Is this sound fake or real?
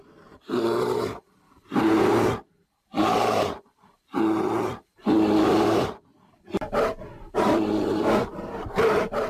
fake